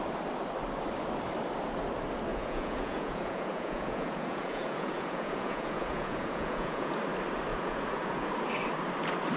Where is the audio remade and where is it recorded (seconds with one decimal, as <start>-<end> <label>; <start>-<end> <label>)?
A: 0.0-2.3 recorded; 2.3-7.0 remade; 7.0-7.5 recorded; 7.5-8.3 remade; 8.3-9.4 recorded